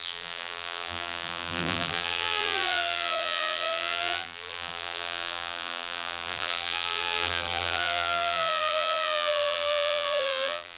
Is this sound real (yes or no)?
no